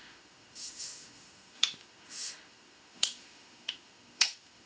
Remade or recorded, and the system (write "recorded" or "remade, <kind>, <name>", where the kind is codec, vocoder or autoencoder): remade, autoencoder, DAC-VAE